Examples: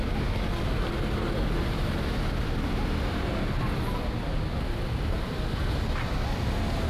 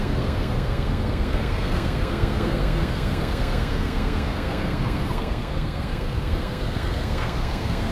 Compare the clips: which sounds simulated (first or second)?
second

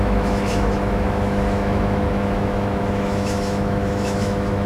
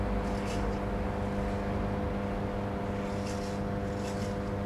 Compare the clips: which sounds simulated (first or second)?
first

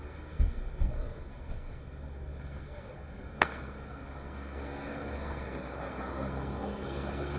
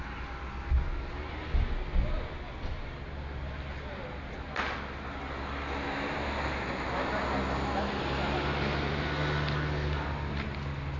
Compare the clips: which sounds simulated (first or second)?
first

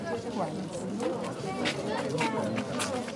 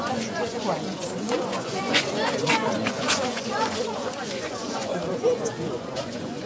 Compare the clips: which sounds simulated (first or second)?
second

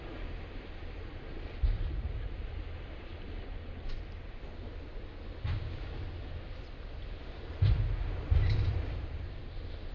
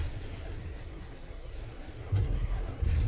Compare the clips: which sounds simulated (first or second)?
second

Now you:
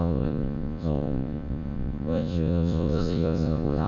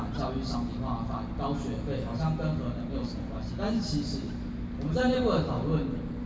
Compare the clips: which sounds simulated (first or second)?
first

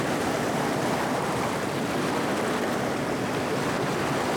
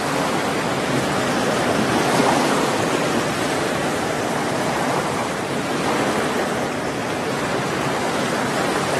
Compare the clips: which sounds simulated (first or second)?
second